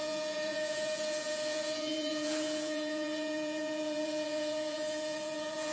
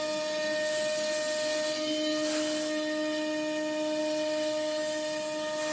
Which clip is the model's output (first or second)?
first